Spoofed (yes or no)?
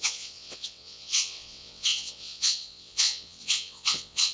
yes